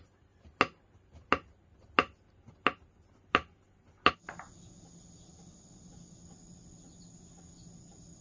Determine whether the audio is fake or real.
real